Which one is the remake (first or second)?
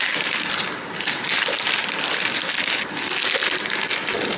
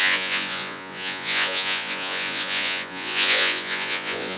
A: second